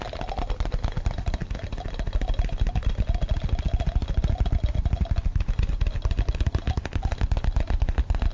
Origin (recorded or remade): recorded